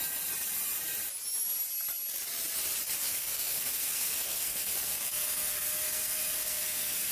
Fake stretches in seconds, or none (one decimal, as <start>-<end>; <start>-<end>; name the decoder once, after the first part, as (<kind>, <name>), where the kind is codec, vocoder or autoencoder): 3.0-7.1 (codec, SNAC)

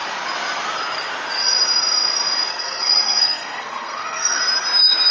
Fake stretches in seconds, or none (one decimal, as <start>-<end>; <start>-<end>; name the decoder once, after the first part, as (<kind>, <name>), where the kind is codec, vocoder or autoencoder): 2.5-4.4 (codec, SNAC)